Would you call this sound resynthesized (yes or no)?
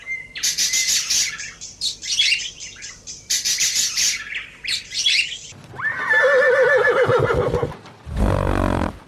yes